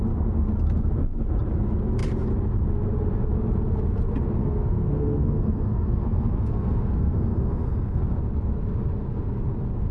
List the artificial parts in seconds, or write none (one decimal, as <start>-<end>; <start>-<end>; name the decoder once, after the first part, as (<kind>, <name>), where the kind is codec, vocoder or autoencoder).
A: 4.4-8.0 (codec, SNAC)